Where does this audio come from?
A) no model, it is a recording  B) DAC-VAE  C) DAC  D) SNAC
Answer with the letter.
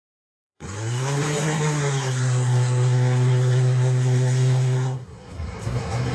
D